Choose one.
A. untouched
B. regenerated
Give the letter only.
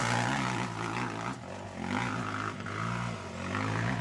A